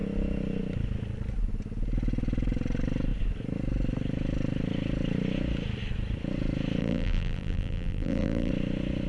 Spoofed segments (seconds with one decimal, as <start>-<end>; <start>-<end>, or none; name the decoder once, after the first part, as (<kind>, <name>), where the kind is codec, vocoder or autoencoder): 6.8-8.5 (vocoder, BigVGAN v2)